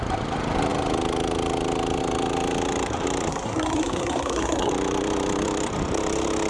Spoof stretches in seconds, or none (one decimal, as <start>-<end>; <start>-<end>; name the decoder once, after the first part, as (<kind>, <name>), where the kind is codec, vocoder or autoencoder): 3.3-4.7 (codec, SNAC)